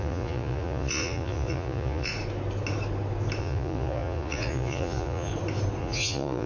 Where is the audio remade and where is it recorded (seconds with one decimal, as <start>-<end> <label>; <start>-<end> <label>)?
0.0-2.1 remade; 2.1-3.4 recorded; 3.4-5.3 remade; 5.3-5.8 recorded; 5.8-6.5 remade